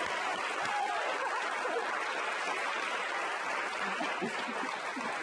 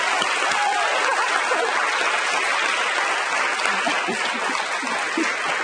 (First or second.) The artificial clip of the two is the first